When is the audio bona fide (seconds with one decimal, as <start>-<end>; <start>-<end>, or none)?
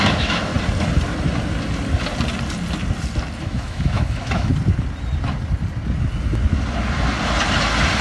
0.5-3.4; 4.5-8.0